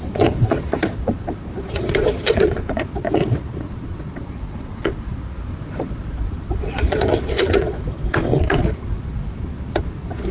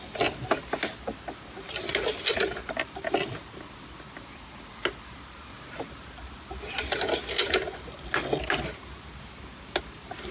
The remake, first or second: first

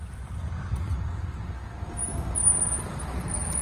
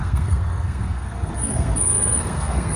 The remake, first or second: second